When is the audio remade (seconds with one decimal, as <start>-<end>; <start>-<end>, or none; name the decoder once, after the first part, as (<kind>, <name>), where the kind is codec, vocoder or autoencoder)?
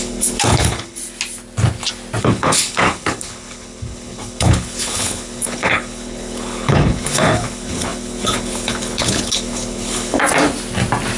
0.0-1.0 (codec, HILCodec); 2.2-10.2